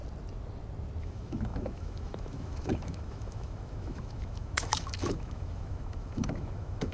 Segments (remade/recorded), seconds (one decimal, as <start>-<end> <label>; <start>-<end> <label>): 0.0-1.0 recorded; 1.0-6.9 remade